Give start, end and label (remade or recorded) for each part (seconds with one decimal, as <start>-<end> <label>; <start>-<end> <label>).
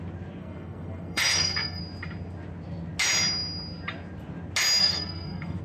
0.0-0.4 recorded; 0.4-1.8 remade; 1.8-4.8 recorded; 4.8-5.6 remade